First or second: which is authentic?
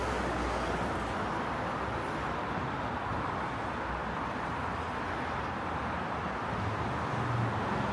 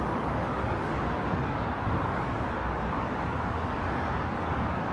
first